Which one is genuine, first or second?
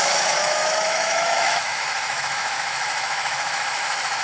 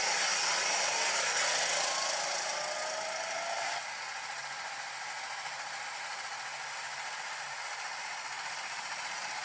second